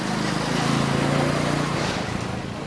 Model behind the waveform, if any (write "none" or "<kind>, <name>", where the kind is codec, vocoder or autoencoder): none